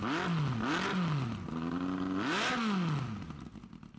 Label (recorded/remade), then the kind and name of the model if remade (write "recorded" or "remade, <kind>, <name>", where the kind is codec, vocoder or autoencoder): recorded